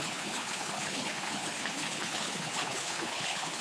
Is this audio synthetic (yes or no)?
yes